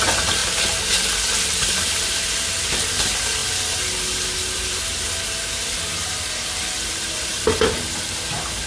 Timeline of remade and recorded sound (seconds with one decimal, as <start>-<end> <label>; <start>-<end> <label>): 0.0-8.7 recorded